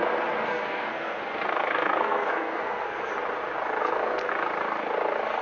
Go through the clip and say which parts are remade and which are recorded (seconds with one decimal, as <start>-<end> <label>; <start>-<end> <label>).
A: 0.0-0.5 recorded; 0.5-3.1 remade; 3.1-3.8 recorded; 3.8-4.3 remade; 4.3-5.4 recorded